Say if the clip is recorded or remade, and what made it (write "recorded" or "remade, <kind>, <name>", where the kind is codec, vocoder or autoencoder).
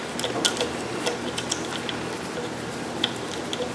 recorded